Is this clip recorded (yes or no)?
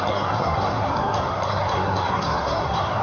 no